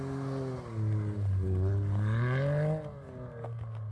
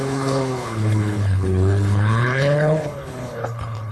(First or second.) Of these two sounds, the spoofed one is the second